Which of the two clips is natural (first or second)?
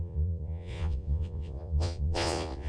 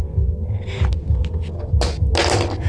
second